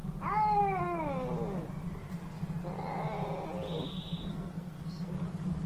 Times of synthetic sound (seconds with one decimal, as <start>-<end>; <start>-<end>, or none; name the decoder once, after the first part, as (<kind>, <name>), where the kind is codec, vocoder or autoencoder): 4.3-5.1 (codec, SNAC)

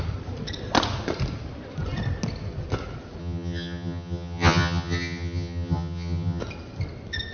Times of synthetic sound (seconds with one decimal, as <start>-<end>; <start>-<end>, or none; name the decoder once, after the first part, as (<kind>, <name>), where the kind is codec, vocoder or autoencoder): 3.2-6.4 (vocoder, HiFi-GAN)

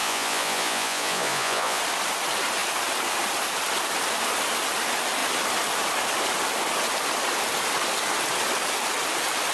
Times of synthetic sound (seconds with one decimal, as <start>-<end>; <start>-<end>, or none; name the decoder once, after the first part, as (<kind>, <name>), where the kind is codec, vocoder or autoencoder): 0.0-1.8 (vocoder, Vocos)

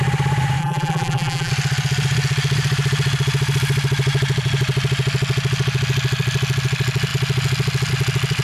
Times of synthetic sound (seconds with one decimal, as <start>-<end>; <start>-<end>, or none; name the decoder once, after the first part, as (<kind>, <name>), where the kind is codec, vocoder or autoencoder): 0.6-1.5 (vocoder, BigVGAN v2)